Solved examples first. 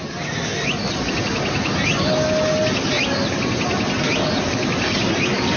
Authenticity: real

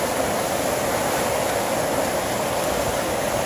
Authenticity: real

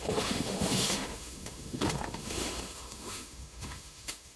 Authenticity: fake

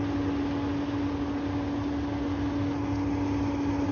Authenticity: real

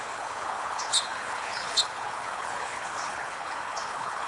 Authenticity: fake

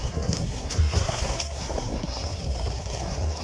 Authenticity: fake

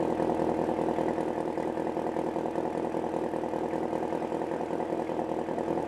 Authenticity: real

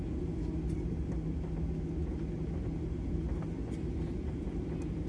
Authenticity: real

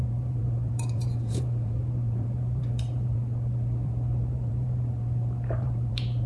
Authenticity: fake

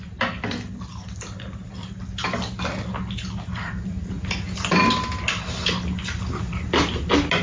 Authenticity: real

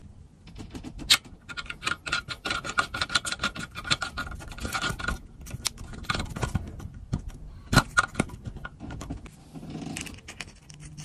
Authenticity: real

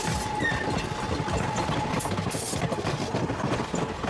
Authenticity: real